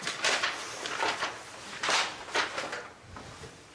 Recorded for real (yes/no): yes